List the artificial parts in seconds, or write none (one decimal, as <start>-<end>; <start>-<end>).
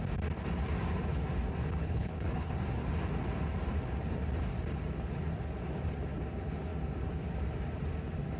1.8-2.5